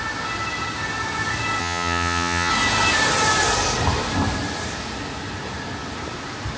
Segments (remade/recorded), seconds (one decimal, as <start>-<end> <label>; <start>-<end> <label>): 0.0-1.6 recorded; 1.6-2.5 remade; 2.5-6.6 recorded